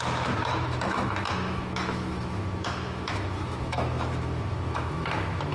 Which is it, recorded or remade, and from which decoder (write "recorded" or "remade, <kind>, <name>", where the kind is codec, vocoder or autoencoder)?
remade, autoencoder, DAC-VAE